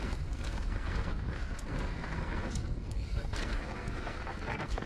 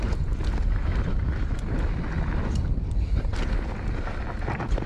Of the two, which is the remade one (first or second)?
first